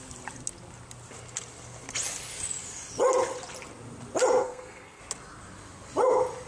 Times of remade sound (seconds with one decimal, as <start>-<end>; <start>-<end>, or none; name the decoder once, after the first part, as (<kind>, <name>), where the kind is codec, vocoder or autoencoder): 4.4-5.0 (codec, SNAC)